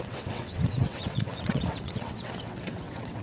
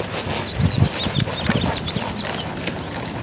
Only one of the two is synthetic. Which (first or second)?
first